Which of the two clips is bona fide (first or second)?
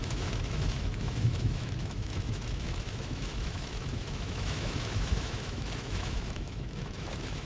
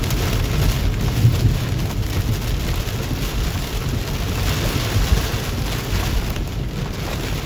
second